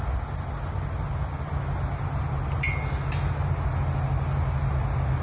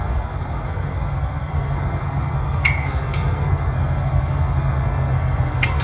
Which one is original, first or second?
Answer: first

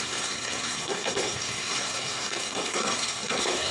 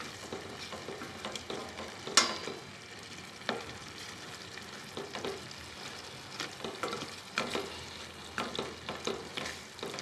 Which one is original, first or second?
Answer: second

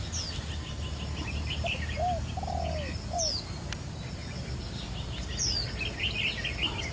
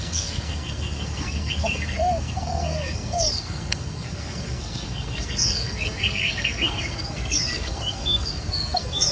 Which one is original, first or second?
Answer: first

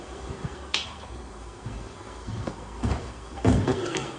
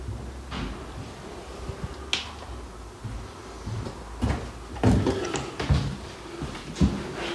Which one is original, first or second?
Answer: second